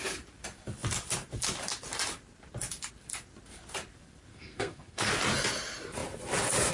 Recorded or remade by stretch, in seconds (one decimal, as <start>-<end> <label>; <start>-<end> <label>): 0.0-4.3 recorded; 4.3-5.1 remade; 5.1-6.7 recorded